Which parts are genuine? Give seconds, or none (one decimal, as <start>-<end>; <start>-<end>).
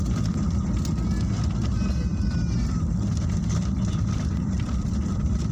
0.0-2.1